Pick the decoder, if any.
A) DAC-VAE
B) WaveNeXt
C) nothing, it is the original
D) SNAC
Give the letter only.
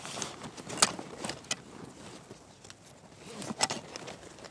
C